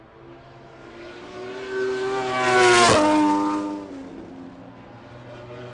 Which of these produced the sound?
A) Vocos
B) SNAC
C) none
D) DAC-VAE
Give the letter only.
C